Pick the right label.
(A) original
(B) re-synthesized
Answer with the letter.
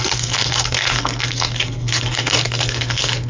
B